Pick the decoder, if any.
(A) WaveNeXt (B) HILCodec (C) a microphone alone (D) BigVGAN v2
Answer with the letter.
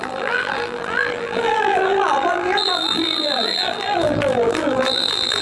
D